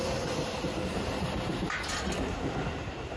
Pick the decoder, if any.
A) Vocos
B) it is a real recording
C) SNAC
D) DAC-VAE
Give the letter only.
B